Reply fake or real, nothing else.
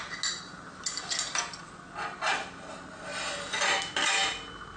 real